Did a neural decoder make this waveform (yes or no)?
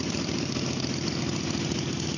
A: no